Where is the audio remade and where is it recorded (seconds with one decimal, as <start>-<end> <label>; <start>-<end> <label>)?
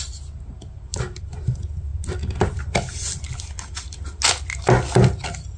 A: 0.0-5.6 recorded